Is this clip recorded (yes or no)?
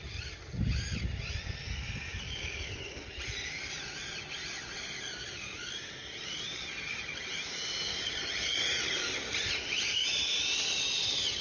yes